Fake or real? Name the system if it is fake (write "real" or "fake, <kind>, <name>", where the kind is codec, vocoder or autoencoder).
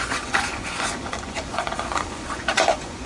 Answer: fake, vocoder, Vocos